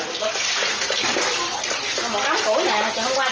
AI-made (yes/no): no